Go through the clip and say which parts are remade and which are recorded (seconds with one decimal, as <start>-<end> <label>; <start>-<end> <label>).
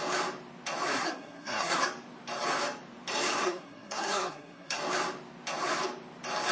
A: 0.0-0.9 recorded; 0.9-1.8 remade; 1.8-3.4 recorded; 3.4-4.8 remade; 4.8-6.5 recorded